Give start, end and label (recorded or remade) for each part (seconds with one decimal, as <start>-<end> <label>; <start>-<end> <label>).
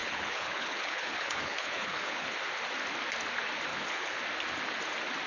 0.0-2.3 remade; 2.3-3.7 recorded; 3.7-4.2 remade; 4.2-5.3 recorded